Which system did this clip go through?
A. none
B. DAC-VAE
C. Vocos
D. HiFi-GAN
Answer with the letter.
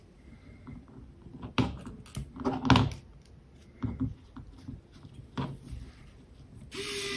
A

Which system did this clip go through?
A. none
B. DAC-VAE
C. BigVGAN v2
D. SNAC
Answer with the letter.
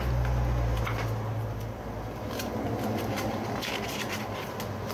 A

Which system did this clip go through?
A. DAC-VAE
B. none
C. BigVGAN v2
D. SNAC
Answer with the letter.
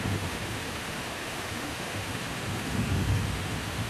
A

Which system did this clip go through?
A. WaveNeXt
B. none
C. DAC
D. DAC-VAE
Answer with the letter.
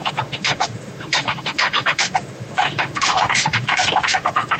D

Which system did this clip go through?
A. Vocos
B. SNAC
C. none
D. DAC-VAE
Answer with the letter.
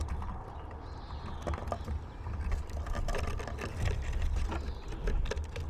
C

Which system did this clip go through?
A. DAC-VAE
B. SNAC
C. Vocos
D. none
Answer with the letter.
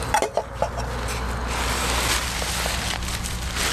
D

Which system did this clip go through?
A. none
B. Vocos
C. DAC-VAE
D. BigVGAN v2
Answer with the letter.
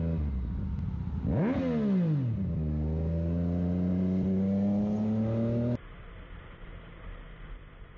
A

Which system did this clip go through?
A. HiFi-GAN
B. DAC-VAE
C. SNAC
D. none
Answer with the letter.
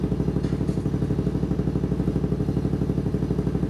D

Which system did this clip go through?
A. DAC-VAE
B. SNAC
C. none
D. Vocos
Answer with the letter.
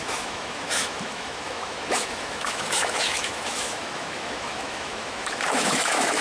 A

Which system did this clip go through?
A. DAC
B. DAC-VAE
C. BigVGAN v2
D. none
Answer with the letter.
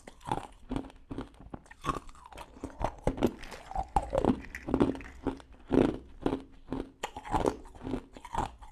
D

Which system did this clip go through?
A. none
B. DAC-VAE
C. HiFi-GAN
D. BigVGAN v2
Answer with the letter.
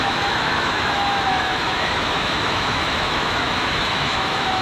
B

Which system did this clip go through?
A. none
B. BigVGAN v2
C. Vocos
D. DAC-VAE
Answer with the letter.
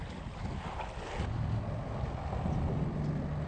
A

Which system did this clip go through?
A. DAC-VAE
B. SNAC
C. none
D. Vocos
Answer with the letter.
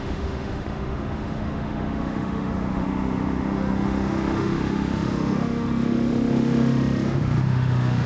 A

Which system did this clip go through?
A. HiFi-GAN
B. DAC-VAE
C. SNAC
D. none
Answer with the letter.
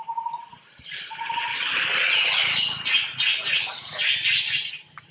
D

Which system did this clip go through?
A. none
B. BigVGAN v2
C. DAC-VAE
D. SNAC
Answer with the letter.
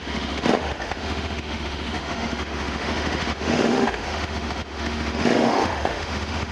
C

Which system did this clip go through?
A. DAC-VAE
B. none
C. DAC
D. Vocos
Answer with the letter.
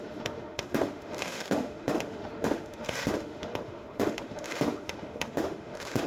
A